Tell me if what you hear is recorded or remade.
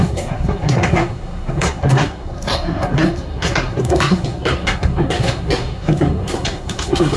remade